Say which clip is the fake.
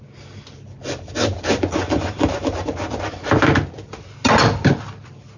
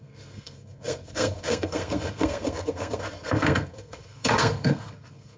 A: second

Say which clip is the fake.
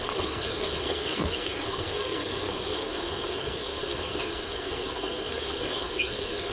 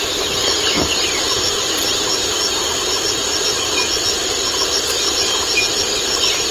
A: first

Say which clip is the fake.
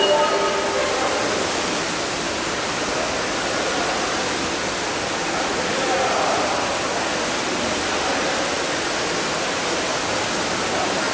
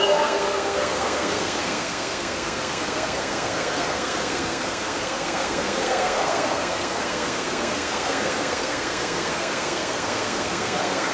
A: second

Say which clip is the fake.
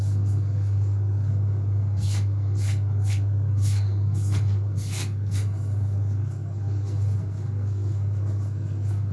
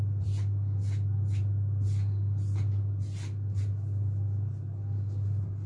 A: first